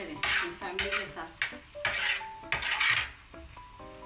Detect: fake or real real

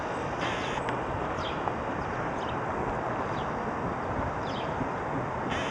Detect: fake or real real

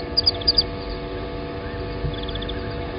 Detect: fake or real real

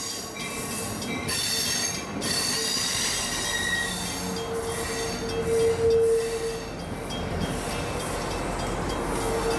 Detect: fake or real real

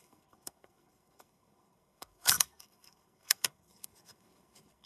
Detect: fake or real fake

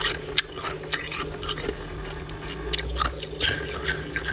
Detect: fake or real real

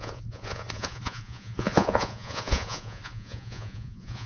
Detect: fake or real fake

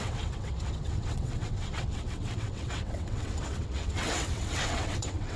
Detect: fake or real fake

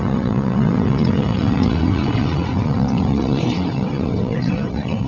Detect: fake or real fake